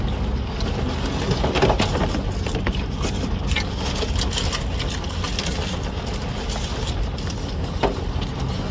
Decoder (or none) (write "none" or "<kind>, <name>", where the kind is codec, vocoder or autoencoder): none